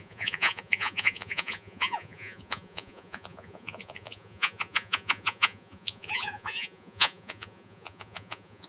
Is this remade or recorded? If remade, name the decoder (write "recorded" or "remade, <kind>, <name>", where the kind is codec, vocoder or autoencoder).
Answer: remade, vocoder, Vocos